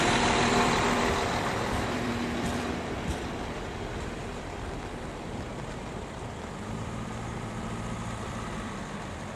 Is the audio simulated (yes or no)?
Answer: yes